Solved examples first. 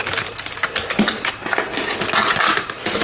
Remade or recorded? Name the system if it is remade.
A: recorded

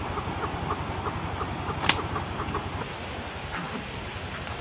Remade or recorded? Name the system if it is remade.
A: recorded